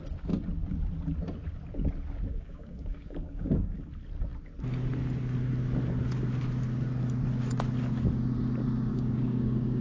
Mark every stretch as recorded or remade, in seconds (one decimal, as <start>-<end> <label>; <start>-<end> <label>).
0.0-2.3 recorded; 2.3-3.9 remade; 3.9-8.9 recorded; 8.9-9.8 remade